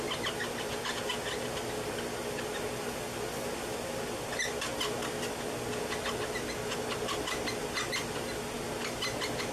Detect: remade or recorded recorded